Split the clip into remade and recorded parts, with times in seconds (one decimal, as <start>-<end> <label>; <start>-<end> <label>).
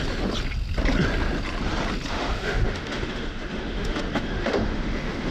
0.0-2.1 recorded; 2.1-5.3 remade